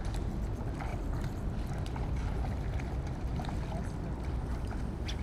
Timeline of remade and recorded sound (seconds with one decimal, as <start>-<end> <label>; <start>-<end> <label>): 0.0-0.9 recorded; 0.9-1.7 remade; 1.7-3.3 recorded; 3.3-5.2 remade